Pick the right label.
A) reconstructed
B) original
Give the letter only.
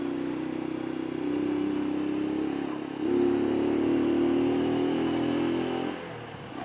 B